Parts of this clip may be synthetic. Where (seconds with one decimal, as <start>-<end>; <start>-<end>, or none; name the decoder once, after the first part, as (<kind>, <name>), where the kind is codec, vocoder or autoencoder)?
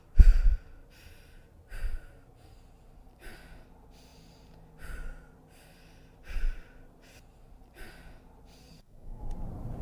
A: 8.6-9.2 (codec, SNAC)